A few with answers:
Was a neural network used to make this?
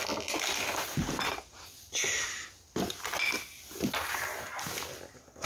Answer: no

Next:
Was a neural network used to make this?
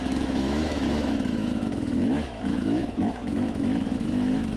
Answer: yes